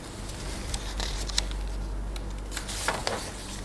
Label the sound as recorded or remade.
recorded